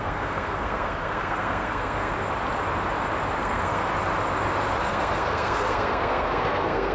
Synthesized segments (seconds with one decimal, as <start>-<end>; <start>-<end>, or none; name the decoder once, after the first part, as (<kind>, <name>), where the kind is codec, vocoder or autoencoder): 0.0-2.1 (codec, SNAC); 3.4-3.9; 4.8-6.9

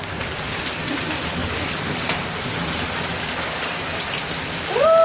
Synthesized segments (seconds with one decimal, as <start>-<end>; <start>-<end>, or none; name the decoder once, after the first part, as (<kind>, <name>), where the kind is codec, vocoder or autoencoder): 1.4-4.4 (vocoder, BigVGAN v2)

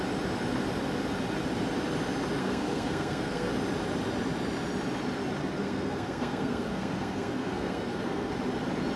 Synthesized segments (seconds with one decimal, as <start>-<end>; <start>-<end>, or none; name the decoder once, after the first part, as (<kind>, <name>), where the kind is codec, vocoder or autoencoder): 2.4-3.5 (codec, SNAC); 5.4-8.3

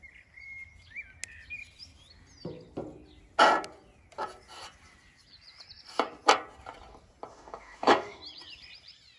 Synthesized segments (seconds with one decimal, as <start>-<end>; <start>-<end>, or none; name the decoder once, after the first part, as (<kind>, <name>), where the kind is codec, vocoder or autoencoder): 7.3-8.2 (autoencoder, DAC-VAE)

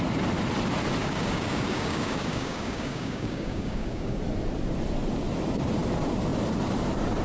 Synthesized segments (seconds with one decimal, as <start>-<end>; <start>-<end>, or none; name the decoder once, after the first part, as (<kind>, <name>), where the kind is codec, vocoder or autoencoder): 1.0-4.2 (codec, DAC)

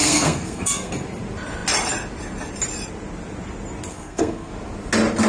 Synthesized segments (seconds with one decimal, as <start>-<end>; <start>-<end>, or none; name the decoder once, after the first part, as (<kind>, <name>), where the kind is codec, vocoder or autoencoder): 0.0-0.9 (codec, SNAC); 3.9-4.5

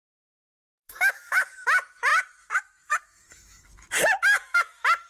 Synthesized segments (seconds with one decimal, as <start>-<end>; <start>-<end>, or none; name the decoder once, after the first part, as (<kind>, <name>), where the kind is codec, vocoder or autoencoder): 0.0-5.1 (autoencoder, DAC-VAE)

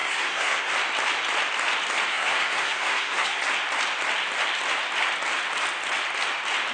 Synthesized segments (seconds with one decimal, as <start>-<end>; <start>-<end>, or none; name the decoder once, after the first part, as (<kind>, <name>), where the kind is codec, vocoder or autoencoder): 0.0-0.7 (codec, SNAC); 2.1-3.4